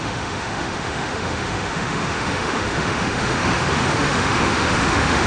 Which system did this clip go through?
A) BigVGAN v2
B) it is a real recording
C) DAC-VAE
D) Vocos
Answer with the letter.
C